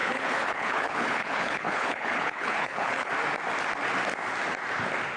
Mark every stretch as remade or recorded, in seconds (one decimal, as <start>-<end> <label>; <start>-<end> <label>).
0.0-3.1 remade; 3.1-5.2 recorded